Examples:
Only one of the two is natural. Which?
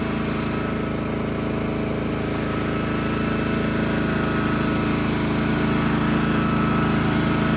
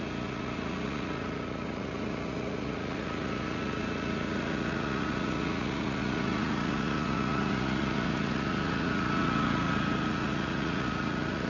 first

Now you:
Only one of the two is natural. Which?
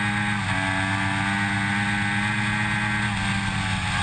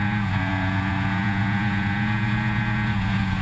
first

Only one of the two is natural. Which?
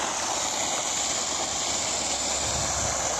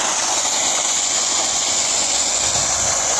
first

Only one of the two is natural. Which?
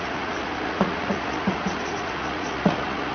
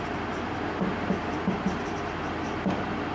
second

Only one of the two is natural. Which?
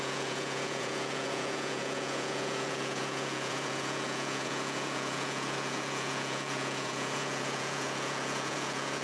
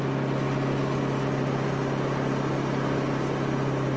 second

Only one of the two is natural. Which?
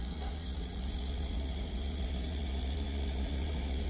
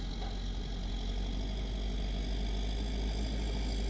second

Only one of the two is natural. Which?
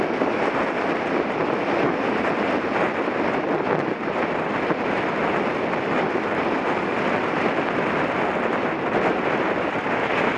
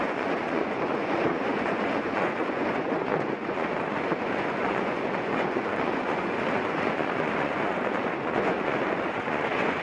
first